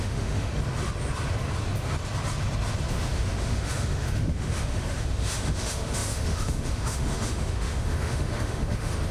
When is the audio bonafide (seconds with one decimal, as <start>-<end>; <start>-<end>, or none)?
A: 0.5-2.9